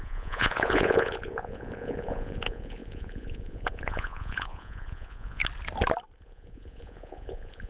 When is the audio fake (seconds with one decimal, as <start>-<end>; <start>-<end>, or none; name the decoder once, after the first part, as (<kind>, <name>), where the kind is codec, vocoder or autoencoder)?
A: 0.0-5.4 (vocoder, Vocos); 6.2-7.7